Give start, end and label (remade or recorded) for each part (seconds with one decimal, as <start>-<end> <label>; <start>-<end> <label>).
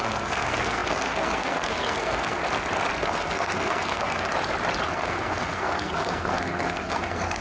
0.0-2.4 remade; 2.4-3.0 recorded; 3.0-4.3 remade; 4.3-4.9 recorded; 4.9-7.4 remade